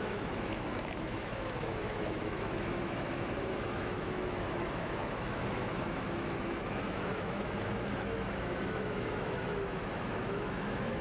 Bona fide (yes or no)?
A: no